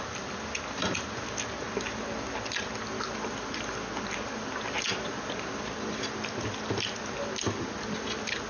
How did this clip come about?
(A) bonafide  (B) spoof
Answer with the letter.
A